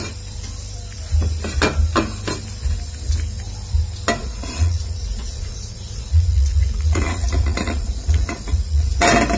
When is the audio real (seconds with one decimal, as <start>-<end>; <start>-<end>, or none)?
0.0-4.2; 9.0-9.4